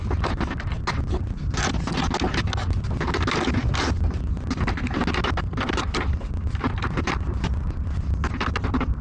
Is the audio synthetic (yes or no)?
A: no